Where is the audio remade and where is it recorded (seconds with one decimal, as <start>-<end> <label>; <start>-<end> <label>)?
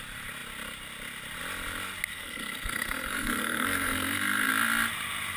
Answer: 0.0-2.1 recorded; 2.1-4.5 remade; 4.5-5.4 recorded